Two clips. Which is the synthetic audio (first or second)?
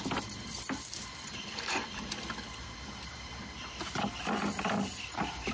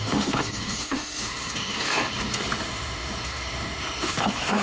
second